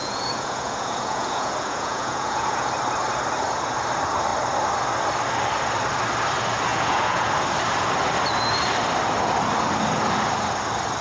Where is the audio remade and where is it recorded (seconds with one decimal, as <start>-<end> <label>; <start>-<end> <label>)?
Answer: 0.0-2.7 remade; 2.7-6.7 recorded; 6.7-7.3 remade; 7.3-11.0 recorded